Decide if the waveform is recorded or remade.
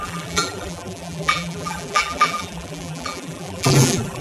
remade